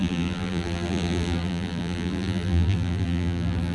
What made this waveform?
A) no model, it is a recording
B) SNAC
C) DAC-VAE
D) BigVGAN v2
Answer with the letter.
D